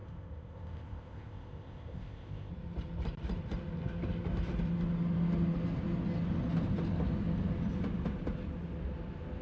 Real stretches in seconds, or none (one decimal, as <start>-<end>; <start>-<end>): 2.5-9.4